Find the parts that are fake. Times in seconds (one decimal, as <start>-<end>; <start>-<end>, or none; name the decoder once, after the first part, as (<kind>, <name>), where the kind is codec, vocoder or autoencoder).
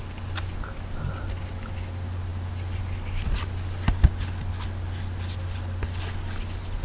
none